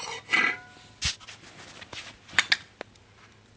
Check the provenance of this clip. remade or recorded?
recorded